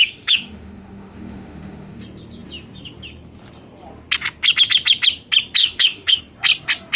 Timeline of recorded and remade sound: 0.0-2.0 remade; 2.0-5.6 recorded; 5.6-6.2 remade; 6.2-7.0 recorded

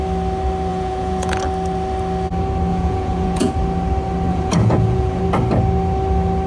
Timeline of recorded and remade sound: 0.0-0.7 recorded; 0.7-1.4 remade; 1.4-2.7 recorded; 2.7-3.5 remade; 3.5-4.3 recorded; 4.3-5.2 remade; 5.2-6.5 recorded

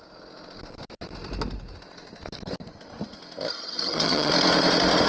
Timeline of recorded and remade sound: 0.0-3.5 recorded; 3.5-4.3 remade; 4.3-5.1 recorded

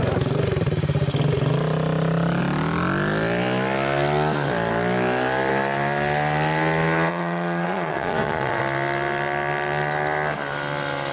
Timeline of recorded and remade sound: 0.0-7.1 recorded; 7.1-8.6 remade; 8.6-11.1 recorded